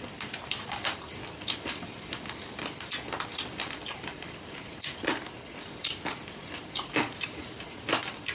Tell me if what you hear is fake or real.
fake